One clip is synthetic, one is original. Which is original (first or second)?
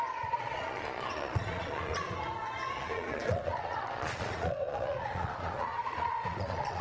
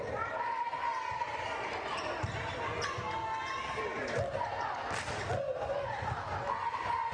second